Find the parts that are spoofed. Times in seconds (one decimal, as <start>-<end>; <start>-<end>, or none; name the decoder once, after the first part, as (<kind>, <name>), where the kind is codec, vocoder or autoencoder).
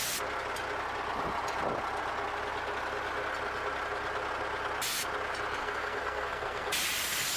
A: 5.6-6.7 (codec, SNAC)